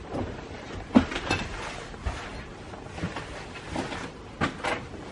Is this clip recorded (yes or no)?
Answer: yes